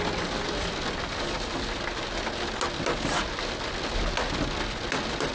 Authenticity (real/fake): real